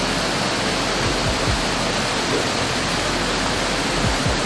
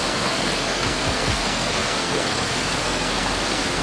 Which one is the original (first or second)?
first